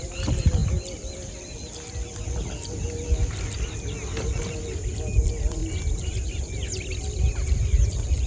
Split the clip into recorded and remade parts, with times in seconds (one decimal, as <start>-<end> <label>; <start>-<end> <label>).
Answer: 0.0-8.3 recorded